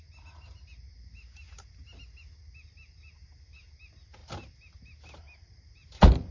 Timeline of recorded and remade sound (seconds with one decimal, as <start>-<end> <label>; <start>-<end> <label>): 0.0-6.3 recorded